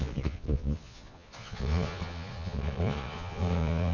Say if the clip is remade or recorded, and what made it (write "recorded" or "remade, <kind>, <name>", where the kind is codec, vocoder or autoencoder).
remade, vocoder, Vocos